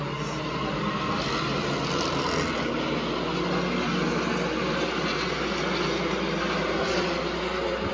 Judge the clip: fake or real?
real